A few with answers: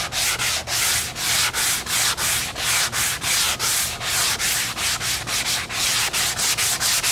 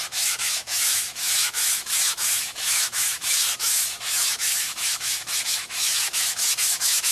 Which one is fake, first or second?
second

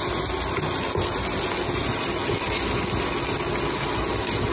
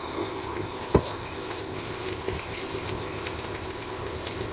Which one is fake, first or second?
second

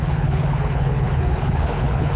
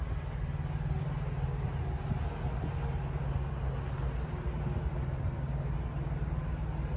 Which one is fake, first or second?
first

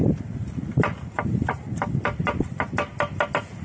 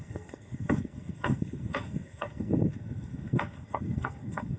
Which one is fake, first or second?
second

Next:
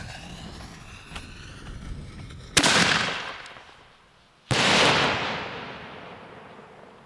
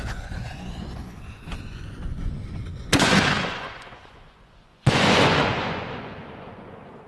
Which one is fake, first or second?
second